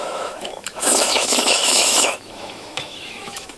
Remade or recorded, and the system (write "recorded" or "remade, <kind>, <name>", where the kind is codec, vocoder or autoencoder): remade, autoencoder, DAC-VAE